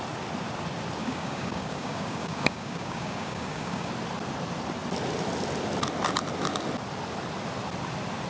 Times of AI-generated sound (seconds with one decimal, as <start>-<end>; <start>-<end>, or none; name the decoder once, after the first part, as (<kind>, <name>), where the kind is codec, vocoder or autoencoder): 1.0-3.9 (codec, DAC)